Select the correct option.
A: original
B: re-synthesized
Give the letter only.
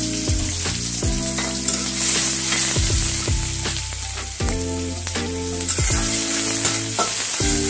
A